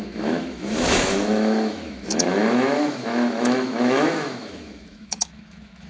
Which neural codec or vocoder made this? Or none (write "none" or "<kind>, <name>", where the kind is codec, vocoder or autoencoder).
autoencoder, DAC-VAE